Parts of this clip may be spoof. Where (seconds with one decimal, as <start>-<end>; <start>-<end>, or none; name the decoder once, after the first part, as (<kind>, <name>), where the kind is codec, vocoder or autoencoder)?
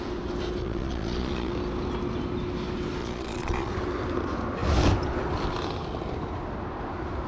0.6-1.5 (vocoder, Vocos); 3.0-3.7